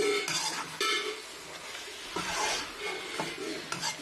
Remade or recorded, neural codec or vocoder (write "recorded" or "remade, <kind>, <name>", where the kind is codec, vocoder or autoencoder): recorded